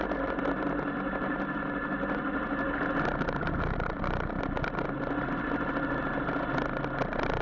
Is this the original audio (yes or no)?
yes